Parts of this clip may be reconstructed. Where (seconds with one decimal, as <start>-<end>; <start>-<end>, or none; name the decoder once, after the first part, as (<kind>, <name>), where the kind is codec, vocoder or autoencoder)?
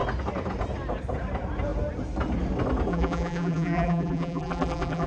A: 2.9-5.1 (vocoder, BigVGAN v2)